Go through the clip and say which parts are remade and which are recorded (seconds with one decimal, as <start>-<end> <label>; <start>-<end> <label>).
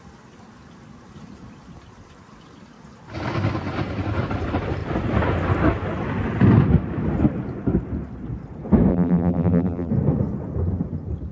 0.0-8.9 recorded; 8.9-9.9 remade; 9.9-11.3 recorded